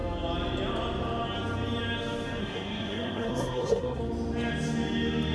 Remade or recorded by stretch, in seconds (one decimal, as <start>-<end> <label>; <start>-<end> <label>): 0.0-2.4 recorded; 2.4-4.0 remade; 4.0-5.3 recorded